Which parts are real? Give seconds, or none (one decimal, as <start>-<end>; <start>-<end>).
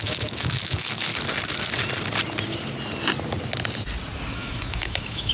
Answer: 1.1-4.3